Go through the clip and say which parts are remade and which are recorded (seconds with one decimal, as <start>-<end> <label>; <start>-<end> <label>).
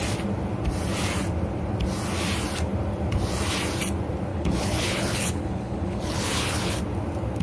0.0-4.3 recorded; 4.3-6.8 remade; 6.8-7.4 recorded